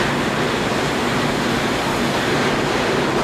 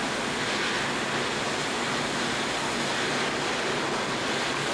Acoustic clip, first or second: second